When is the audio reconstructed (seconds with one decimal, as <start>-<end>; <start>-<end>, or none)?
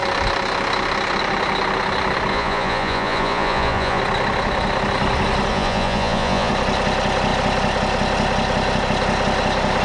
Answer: 2.3-4.0; 5.5-6.5